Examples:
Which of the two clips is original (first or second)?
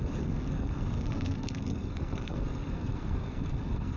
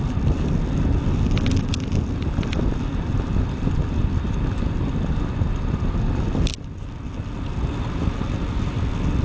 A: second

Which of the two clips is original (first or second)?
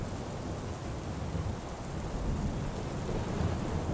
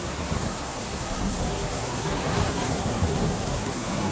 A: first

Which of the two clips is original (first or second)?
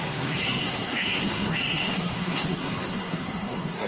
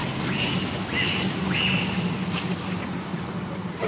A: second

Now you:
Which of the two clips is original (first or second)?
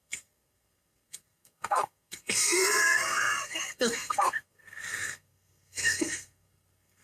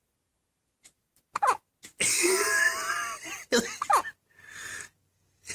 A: second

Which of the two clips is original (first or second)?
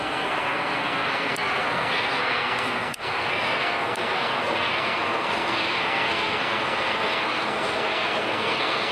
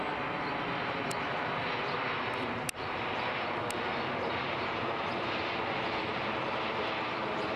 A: second